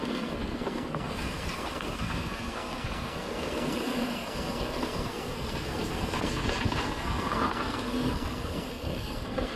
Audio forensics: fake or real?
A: fake